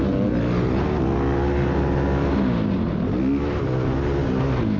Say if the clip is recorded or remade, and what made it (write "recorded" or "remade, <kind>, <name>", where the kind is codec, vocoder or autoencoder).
recorded